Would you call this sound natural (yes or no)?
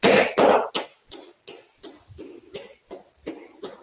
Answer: yes